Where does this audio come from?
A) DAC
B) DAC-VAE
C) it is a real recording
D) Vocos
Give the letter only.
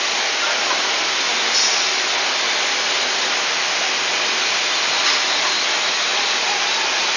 C